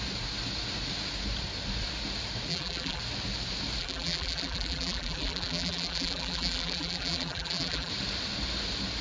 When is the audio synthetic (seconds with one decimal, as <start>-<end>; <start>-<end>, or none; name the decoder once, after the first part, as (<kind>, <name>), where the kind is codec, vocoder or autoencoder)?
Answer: 2.5-3.0 (vocoder, BigVGAN v2); 3.8-7.9